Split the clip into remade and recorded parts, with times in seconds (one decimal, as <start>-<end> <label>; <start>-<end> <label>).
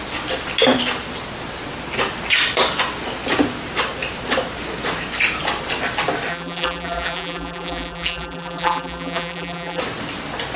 0.0-6.3 recorded; 6.3-9.8 remade; 9.8-10.6 recorded